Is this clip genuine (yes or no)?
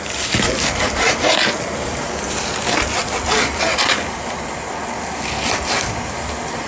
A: no